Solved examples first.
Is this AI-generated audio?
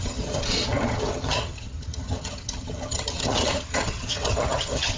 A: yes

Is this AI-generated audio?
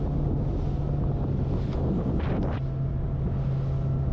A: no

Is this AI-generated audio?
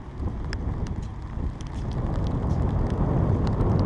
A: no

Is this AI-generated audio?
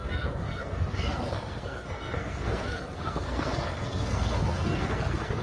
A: yes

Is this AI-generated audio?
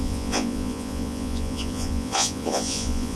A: yes